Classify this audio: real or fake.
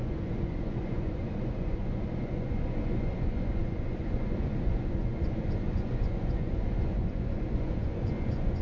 fake